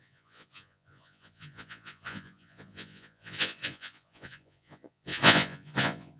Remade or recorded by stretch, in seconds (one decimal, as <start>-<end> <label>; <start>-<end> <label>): 0.0-6.2 remade